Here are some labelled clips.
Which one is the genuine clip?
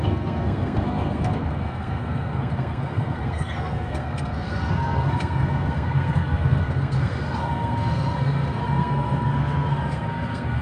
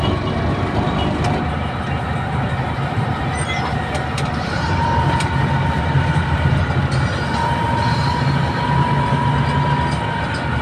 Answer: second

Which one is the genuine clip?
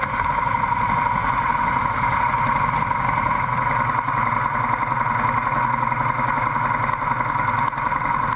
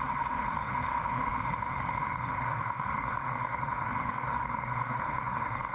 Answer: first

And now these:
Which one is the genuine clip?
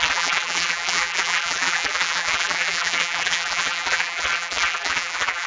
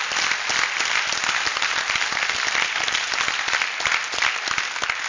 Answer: second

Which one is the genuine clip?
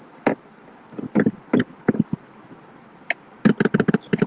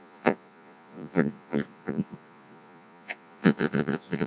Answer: first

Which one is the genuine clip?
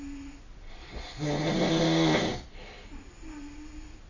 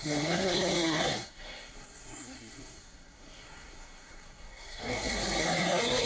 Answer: first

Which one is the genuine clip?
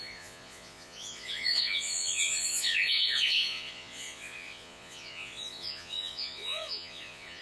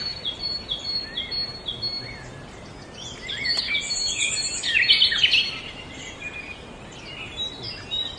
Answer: second